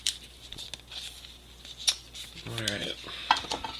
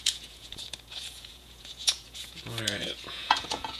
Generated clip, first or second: second